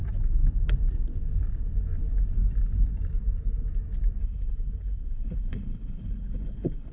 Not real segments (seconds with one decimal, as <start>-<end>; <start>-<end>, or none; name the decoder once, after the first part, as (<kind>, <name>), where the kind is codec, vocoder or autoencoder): 4.2-6.9 (codec, HILCodec)